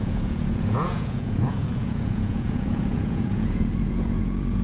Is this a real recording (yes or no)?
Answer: no